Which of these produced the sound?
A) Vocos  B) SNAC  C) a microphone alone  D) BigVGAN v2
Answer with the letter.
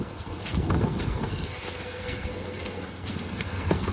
B